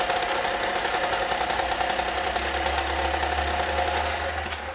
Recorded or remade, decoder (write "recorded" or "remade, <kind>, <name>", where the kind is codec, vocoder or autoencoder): recorded